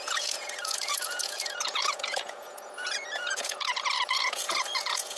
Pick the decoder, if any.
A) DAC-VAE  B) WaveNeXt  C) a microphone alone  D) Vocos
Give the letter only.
D